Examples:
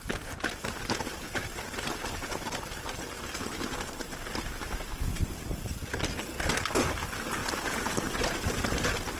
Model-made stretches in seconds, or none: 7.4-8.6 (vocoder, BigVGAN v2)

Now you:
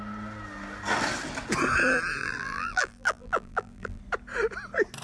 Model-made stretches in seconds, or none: 2.2-4.0 (vocoder, BigVGAN v2)